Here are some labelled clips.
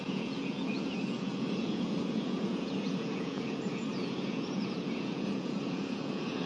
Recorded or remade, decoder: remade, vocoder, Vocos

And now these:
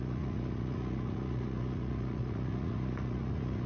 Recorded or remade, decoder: remade, vocoder, Vocos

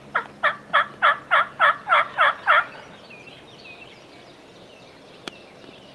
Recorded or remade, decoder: recorded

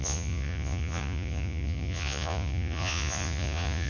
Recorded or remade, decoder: remade, vocoder, Vocos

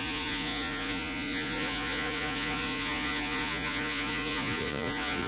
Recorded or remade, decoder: remade, vocoder, Vocos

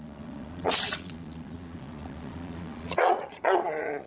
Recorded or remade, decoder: remade, vocoder, Vocos